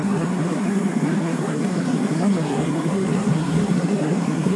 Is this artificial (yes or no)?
yes